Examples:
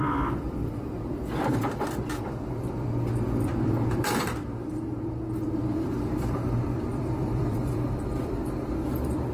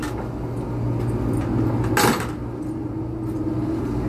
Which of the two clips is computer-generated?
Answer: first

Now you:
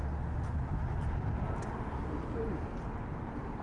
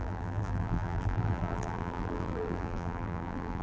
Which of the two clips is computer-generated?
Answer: second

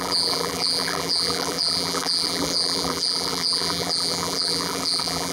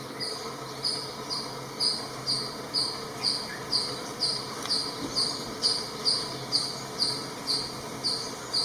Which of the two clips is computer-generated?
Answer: first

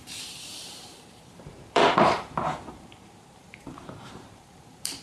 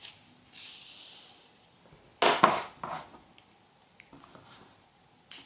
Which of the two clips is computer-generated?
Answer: first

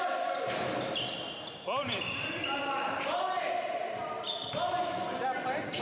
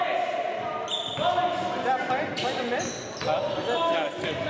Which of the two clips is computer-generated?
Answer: first